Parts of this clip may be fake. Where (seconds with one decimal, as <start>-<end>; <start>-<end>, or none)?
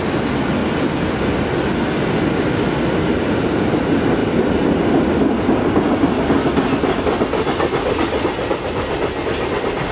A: none